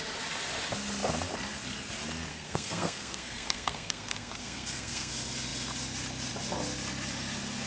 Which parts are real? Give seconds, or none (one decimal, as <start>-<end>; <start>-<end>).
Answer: 0.0-2.3; 5.1-7.7